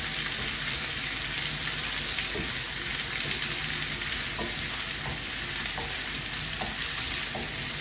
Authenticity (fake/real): real